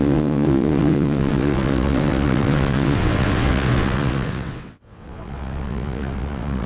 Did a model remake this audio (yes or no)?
yes